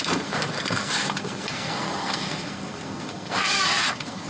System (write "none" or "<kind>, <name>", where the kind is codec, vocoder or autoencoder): codec, SNAC